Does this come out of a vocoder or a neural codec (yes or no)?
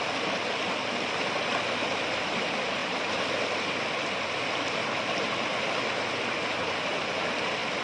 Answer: no